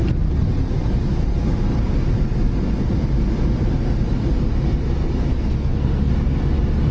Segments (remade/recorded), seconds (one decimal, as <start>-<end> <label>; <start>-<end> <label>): 0.0-5.3 recorded; 5.3-6.1 remade; 6.1-6.9 recorded